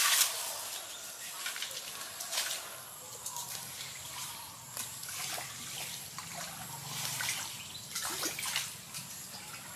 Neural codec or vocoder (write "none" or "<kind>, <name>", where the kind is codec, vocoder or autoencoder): none